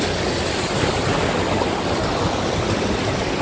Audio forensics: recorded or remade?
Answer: recorded